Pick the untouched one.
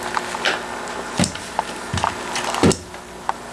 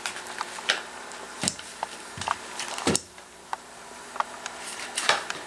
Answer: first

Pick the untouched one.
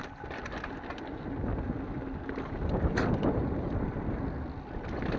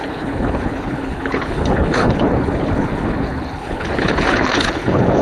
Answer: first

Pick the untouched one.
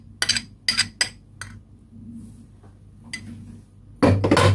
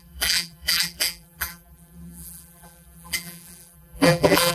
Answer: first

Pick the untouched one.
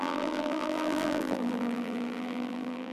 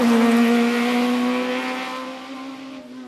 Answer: second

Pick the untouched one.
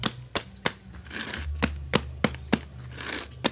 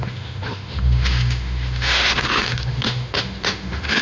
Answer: first